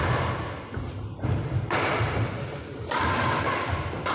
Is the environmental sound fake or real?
real